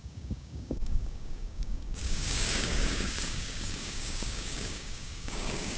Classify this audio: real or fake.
fake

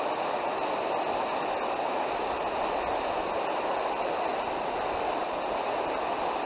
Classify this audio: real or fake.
real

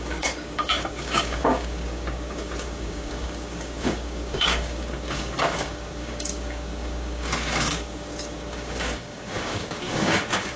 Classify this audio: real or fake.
fake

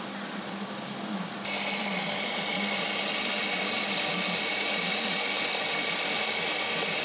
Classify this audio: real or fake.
real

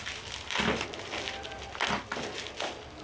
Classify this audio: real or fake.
real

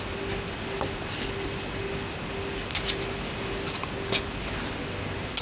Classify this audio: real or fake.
real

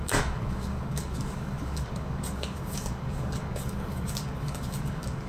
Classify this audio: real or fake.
fake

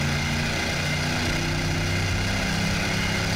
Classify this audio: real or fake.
real